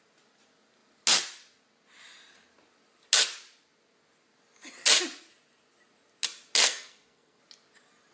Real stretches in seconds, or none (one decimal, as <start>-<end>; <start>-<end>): 0.0-6.6; 7.4-8.1